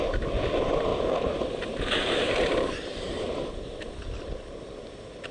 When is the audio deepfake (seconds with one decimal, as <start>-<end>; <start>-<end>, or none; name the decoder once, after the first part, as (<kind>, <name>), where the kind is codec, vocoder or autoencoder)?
0.9-3.9 (vocoder, BigVGAN v2)